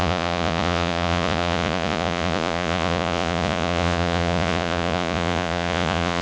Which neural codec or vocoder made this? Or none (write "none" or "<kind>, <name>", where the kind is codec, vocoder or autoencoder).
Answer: vocoder, Vocos